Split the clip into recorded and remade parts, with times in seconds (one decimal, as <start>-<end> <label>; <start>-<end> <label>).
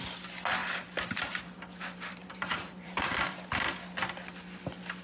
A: 0.0-0.6 recorded; 0.6-1.2 remade; 1.2-2.2 recorded; 2.2-3.5 remade; 3.5-5.0 recorded